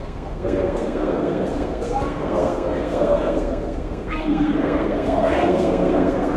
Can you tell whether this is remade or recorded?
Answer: remade